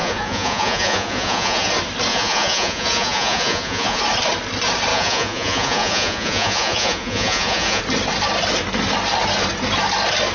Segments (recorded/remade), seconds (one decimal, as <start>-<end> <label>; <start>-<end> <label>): 0.0-1.7 remade; 1.7-2.1 recorded; 2.1-4.0 remade; 4.0-4.9 recorded; 4.9-7.8 remade; 7.8-10.3 recorded